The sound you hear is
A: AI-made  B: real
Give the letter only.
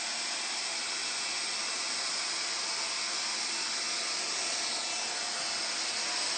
B